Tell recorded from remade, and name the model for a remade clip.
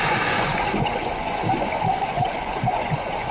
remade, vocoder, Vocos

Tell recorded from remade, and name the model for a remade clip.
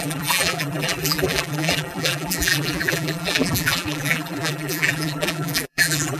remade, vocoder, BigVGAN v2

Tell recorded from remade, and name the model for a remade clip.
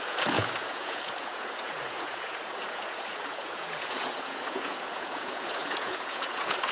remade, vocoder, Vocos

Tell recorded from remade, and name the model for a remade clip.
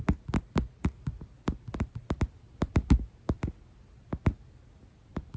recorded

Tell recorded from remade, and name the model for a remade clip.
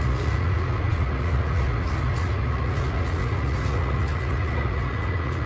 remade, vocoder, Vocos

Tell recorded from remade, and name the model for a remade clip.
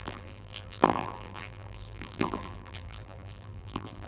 remade, vocoder, BigVGAN v2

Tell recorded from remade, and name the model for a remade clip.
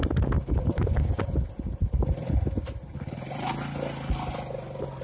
recorded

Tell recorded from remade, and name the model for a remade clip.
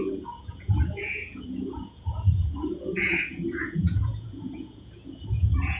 remade, vocoder, Vocos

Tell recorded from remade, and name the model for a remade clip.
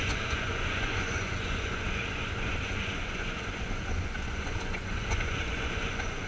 remade, vocoder, Vocos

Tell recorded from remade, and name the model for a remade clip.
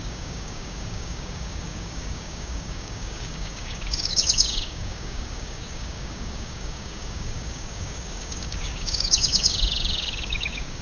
remade, codec, DAC